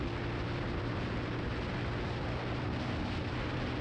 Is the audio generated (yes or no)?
no